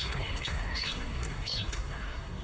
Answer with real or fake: fake